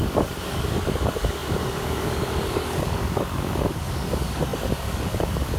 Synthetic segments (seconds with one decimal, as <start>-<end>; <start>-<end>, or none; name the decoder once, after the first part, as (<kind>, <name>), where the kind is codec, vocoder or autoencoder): 0.0-5.6 (codec, DAC)